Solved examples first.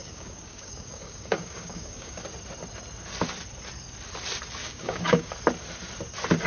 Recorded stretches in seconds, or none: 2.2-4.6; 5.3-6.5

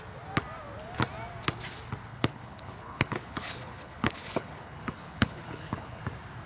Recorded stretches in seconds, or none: 0.0-2.1; 6.0-6.5

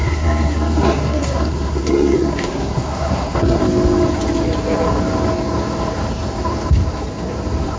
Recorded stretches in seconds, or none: 3.6-7.8